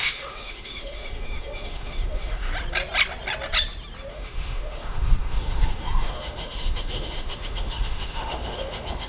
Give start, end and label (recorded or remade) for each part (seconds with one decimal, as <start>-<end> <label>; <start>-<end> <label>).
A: 0.0-2.5 remade; 2.5-4.1 recorded; 4.1-9.1 remade